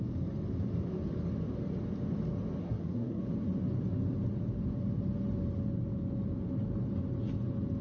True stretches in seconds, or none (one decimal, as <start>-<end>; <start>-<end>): 0.0-2.6; 3.2-7.8